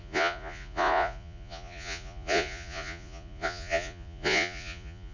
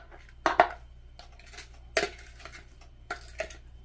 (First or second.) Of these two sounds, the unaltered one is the second